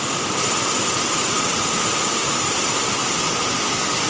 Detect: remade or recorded recorded